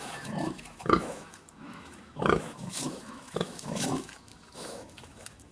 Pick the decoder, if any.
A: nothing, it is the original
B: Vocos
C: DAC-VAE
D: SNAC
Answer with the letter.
C